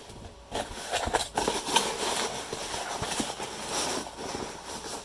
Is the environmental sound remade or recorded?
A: recorded